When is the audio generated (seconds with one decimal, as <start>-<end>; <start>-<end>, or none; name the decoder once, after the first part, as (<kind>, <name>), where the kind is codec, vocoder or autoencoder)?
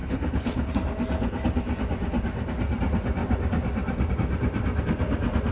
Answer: 0.0-0.7 (codec, HILCodec)